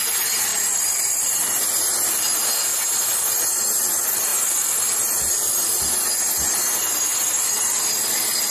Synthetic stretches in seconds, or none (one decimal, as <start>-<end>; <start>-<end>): none